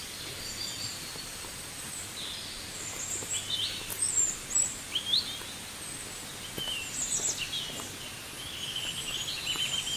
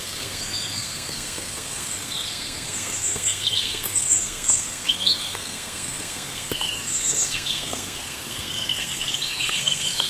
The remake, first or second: second